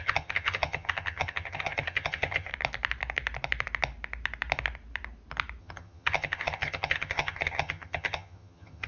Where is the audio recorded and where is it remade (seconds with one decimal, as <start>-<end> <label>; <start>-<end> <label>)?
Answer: 0.0-2.5 remade; 2.5-5.6 recorded; 5.6-8.9 remade